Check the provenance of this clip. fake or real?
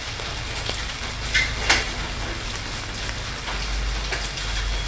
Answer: real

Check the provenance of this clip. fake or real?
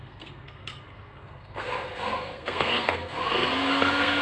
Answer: fake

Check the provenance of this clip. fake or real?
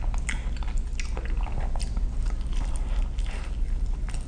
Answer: real